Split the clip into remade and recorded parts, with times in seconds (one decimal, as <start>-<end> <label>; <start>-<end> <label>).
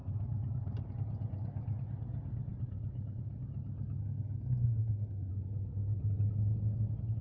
0.0-4.0 recorded; 4.0-5.3 remade; 5.3-7.2 recorded